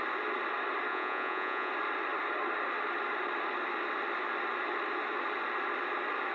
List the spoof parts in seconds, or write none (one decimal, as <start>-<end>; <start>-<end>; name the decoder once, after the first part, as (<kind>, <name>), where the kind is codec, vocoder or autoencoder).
0.9-1.7 (vocoder, Vocos)